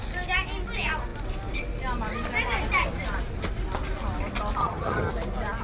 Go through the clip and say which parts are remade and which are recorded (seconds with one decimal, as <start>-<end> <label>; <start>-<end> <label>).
0.0-4.6 recorded; 4.6-5.1 remade; 5.1-5.6 recorded